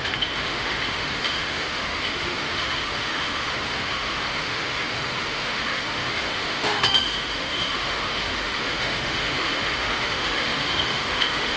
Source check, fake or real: fake